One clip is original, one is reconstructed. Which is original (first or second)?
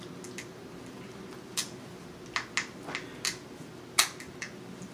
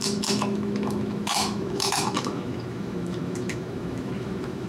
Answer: first